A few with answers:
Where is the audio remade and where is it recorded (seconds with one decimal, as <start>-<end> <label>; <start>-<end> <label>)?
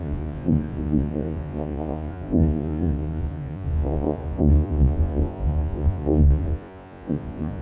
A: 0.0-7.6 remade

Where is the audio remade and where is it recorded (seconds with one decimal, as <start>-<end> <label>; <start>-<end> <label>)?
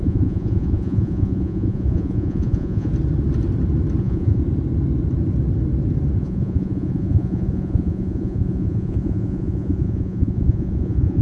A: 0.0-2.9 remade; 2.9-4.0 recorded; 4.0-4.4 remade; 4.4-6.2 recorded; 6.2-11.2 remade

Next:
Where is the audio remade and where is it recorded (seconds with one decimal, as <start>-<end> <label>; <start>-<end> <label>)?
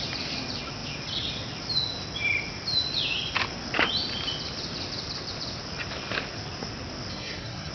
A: 0.0-7.1 recorded; 7.1-7.7 remade